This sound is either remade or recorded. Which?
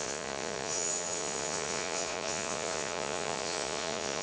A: remade